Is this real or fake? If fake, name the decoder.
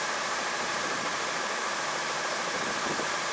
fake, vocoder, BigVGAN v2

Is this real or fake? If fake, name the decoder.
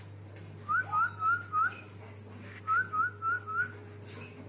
real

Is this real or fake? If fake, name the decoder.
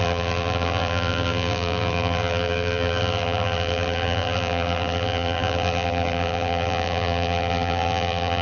fake, vocoder, BigVGAN v2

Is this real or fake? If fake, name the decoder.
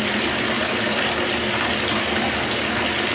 real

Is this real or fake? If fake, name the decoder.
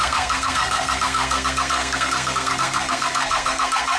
fake, codec, SNAC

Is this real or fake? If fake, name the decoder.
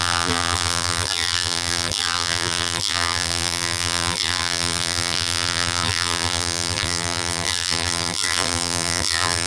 fake, vocoder, BigVGAN v2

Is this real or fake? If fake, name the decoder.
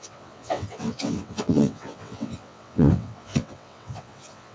fake, vocoder, WaveNeXt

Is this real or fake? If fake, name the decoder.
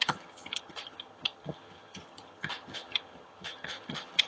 fake, vocoder, HiFi-GAN